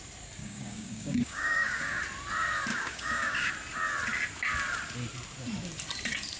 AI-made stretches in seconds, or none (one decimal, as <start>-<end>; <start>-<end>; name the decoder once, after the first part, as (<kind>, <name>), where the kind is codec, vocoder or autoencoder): 0.4-2.0 (codec, DAC); 2.7-3.5